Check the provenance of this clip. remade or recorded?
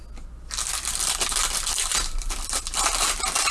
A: recorded